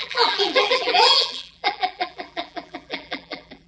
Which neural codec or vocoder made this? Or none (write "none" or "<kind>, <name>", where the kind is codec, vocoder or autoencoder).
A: vocoder, BigVGAN v2